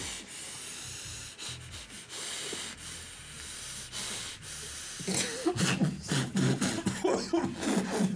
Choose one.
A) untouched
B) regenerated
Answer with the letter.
A